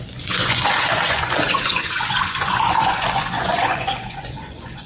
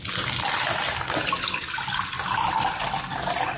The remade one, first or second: first